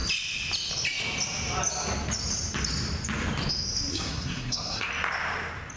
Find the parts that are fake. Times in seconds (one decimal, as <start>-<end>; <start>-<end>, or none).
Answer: 3.9-4.9